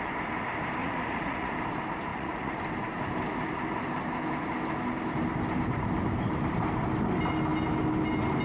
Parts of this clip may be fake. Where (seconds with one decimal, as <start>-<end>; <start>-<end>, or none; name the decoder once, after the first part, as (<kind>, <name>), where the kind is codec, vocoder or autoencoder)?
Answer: 0.8-1.5 (vocoder, Vocos); 2.1-2.6